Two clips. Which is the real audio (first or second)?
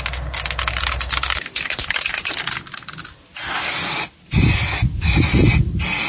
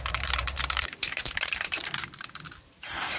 first